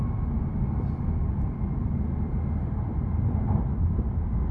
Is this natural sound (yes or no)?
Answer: yes